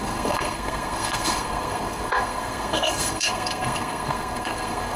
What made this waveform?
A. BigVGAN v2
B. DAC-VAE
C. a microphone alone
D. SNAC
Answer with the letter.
D